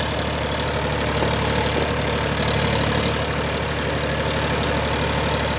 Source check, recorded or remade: recorded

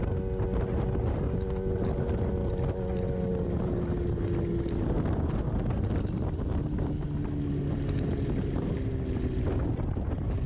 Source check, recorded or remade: recorded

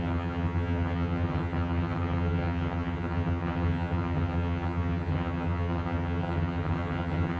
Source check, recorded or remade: remade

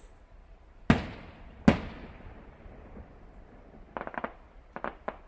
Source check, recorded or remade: recorded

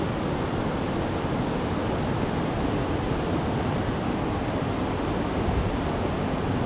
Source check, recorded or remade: recorded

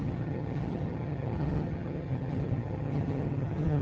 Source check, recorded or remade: remade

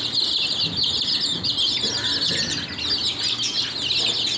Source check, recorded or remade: recorded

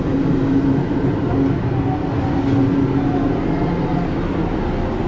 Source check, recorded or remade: recorded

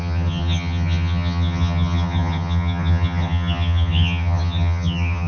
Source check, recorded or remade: remade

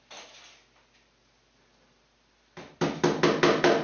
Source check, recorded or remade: recorded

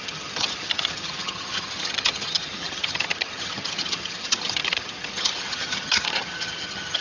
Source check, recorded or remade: remade